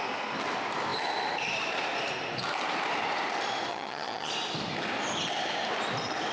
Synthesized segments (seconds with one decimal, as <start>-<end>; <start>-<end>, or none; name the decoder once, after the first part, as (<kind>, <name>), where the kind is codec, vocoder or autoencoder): 3.7-4.3 (vocoder, HiFi-GAN)